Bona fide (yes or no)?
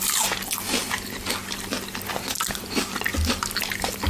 yes